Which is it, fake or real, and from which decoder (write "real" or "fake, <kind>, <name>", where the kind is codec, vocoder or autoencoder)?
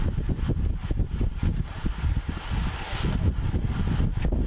real